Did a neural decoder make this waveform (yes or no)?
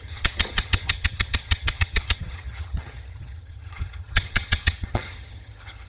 yes